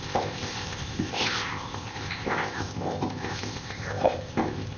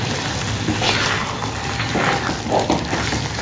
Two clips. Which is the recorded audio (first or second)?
second